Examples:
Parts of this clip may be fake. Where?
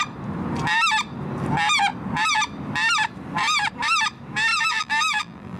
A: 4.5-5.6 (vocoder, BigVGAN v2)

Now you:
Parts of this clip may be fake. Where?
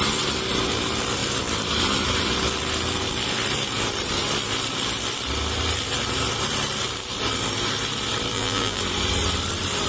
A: 8.3-8.8 (vocoder, BigVGAN v2)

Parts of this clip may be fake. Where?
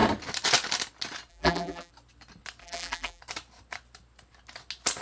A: 1.3-1.9 (vocoder, BigVGAN v2); 2.6-3.2